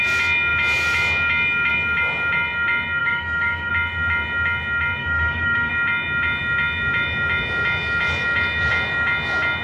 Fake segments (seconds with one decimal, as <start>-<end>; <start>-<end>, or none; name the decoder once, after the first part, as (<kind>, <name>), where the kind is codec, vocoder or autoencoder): 3.0-3.7 (autoencoder, DAC-VAE); 5.0-5.7